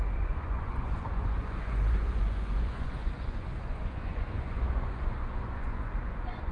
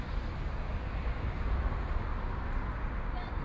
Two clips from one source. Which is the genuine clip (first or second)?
second